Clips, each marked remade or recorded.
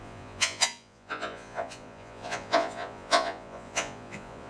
remade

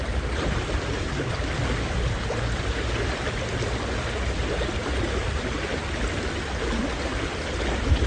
recorded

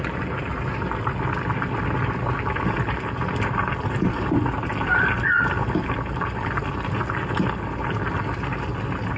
recorded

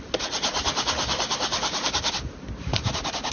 recorded